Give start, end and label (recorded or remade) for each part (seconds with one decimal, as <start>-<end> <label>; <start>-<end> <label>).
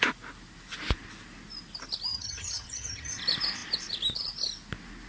0.0-2.1 recorded; 2.1-3.2 remade; 3.2-5.1 recorded